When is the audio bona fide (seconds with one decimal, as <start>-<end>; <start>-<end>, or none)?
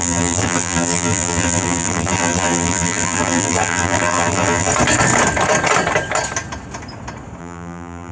4.7-7.4